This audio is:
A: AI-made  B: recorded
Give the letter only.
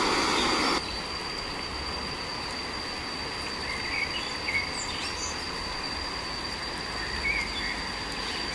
B